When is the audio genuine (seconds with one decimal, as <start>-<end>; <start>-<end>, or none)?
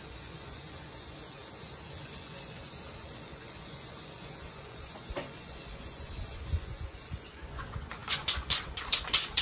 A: none